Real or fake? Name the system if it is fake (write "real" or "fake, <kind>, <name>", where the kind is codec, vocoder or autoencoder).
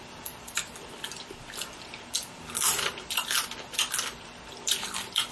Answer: fake, vocoder, BigVGAN v2